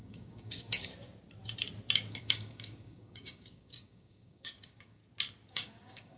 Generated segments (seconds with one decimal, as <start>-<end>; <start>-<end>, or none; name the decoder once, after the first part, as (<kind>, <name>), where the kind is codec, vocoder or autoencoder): 0.0-0.9 (codec, DAC); 2.1-5.0; 5.5-6.2